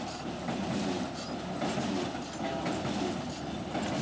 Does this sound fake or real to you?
real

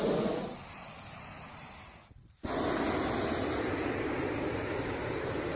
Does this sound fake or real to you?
real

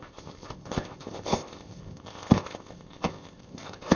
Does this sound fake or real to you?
fake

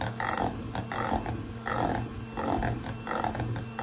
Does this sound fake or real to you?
real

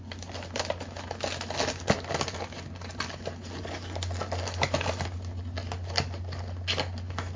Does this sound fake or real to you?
real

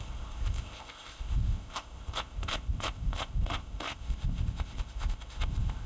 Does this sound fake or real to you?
fake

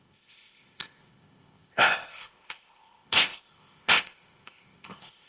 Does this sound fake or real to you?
fake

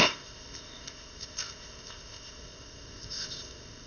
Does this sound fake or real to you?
fake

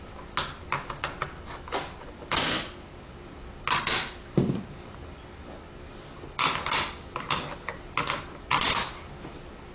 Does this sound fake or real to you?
real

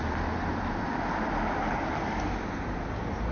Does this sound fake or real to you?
real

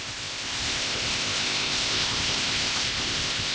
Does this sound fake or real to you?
fake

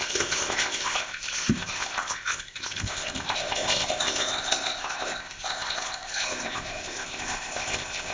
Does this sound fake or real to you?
fake